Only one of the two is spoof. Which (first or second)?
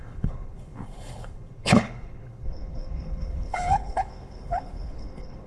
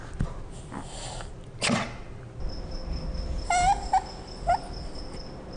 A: first